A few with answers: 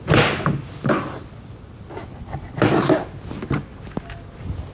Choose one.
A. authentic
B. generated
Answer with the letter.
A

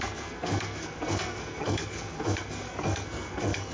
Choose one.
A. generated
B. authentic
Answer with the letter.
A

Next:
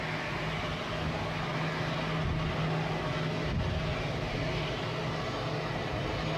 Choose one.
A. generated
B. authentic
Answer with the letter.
B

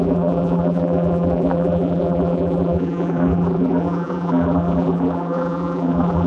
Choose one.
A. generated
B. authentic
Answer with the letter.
A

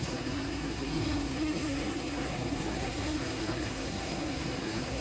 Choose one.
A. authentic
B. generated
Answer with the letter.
B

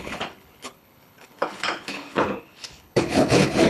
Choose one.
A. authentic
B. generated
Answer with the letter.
B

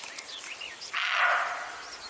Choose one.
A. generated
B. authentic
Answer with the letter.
B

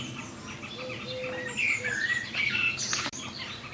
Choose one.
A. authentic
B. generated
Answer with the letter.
A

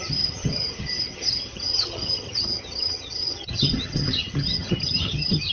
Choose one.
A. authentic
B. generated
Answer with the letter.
B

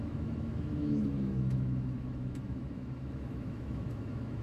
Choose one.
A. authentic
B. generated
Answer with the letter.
B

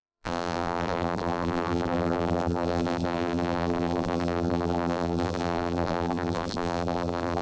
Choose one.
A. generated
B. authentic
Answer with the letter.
A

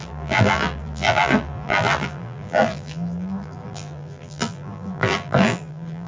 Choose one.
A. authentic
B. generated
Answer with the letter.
B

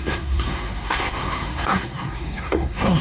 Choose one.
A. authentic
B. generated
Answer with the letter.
B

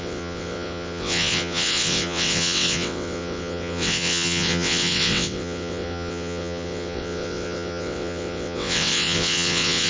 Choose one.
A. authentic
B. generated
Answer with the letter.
B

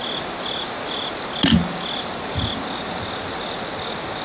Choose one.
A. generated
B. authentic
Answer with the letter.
B